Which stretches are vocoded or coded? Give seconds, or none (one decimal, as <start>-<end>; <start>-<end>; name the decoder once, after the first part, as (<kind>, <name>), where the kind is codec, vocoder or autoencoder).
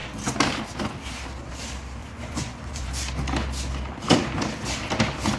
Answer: 2.0-2.9 (vocoder, Vocos)